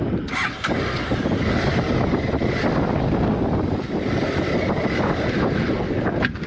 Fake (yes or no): no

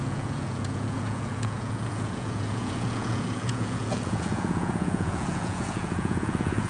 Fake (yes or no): yes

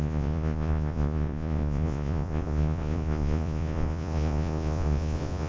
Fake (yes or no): yes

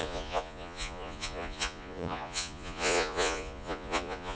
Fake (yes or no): yes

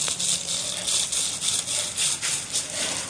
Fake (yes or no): no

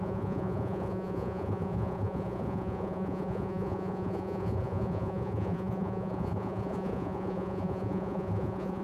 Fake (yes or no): yes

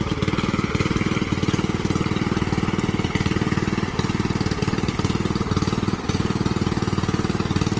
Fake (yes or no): no